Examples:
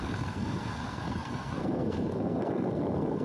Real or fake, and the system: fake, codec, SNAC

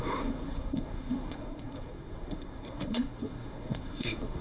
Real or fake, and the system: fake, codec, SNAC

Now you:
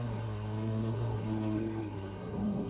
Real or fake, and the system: fake, codec, SNAC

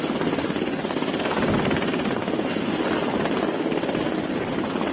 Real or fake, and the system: real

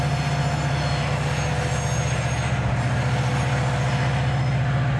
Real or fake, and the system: real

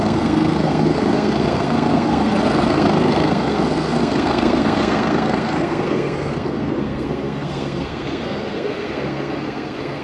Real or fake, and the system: fake, codec, SNAC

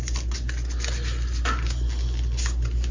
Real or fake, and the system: real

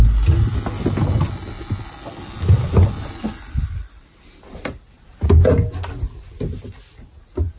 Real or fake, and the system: real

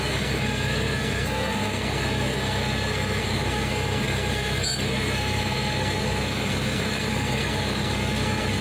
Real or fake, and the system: fake, codec, SNAC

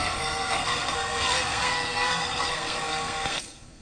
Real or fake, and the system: fake, codec, SNAC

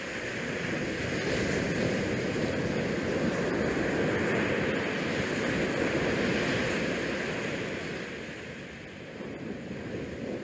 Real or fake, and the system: real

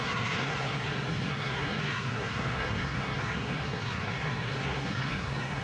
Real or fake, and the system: fake, codec, SNAC